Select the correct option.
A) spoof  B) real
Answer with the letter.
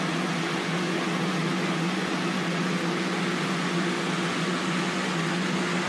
A